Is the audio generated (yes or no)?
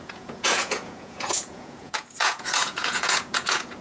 yes